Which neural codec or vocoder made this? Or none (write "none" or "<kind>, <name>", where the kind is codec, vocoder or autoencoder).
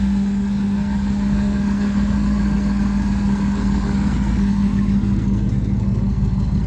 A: codec, SNAC